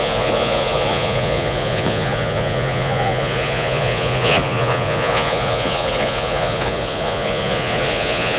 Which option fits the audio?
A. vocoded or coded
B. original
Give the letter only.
A